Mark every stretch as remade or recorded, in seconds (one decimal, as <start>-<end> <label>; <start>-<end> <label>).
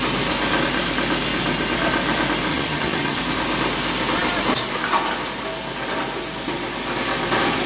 0.0-2.5 recorded; 2.5-3.2 remade; 3.2-7.7 recorded